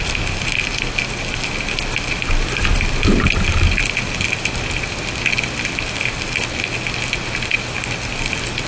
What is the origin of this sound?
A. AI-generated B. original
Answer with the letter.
B